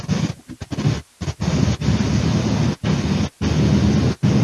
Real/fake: real